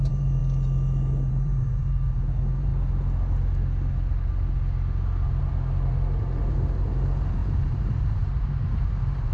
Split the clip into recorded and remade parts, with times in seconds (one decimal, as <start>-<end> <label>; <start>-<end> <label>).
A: 0.0-0.4 remade; 0.4-1.3 recorded; 1.3-2.7 remade; 2.7-5.4 recorded; 5.4-9.3 remade